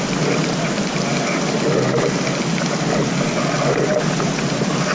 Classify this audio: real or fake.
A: real